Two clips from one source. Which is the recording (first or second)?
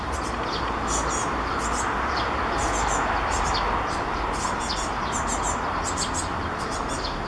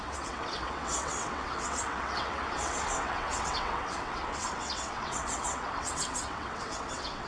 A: first